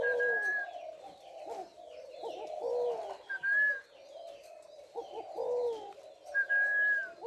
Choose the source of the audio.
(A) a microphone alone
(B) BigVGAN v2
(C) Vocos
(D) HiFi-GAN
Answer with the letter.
A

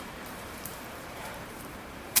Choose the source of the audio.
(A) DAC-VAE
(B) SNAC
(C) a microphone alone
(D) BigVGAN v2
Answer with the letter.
D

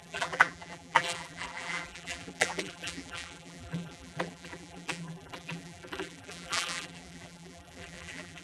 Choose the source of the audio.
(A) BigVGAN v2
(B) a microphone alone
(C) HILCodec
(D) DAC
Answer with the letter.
A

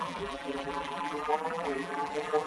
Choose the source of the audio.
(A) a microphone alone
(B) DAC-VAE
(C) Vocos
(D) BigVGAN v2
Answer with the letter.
D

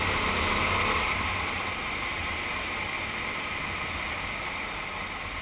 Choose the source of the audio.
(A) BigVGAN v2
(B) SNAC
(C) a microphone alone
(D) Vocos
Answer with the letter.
C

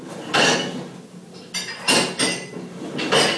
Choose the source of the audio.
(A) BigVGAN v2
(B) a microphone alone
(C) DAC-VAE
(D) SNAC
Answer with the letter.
B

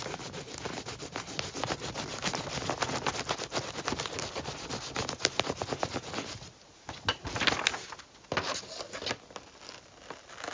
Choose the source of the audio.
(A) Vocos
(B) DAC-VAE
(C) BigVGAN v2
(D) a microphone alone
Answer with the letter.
D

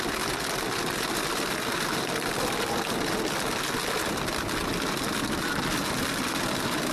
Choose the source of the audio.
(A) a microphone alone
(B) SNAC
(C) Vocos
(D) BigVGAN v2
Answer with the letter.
A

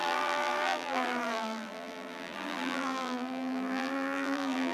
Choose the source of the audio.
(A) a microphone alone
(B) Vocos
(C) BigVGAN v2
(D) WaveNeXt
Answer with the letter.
C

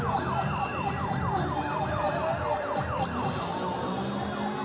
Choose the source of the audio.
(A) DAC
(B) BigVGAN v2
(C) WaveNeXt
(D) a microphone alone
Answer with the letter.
D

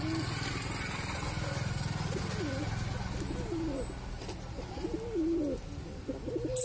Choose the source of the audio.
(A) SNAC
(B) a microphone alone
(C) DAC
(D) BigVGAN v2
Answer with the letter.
B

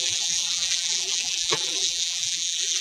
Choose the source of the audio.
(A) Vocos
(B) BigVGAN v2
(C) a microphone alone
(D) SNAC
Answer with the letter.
B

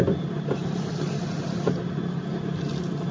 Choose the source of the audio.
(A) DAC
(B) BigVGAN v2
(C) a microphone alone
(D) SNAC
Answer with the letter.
C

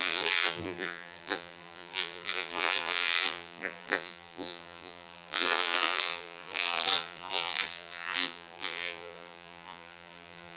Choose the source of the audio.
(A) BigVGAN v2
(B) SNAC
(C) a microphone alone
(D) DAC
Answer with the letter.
A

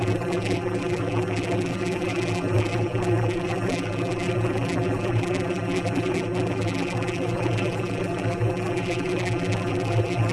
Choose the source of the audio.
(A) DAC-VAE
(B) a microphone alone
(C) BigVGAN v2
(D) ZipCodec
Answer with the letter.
C